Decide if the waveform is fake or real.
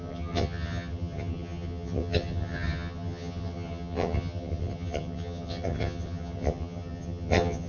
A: fake